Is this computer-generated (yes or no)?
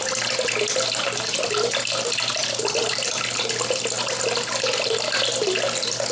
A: no